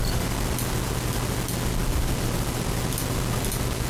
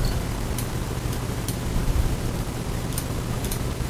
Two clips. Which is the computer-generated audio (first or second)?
second